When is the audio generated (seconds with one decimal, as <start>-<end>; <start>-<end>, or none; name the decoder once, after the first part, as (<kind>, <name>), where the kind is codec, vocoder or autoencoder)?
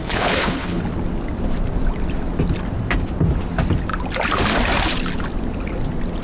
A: 0.0-0.8 (codec, HILCodec)